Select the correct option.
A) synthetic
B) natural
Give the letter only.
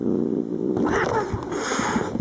B